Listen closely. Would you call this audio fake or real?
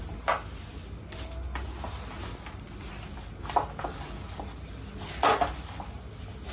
real